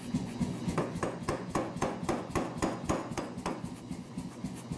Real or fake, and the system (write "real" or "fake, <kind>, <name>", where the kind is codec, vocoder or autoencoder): fake, vocoder, Vocos